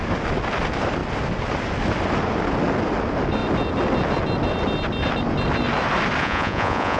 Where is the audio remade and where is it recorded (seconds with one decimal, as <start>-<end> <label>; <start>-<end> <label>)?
0.0-6.2 recorded; 6.2-7.0 remade